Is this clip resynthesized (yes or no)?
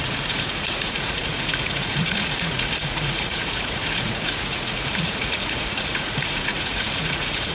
yes